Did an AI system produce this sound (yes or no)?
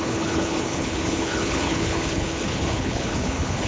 yes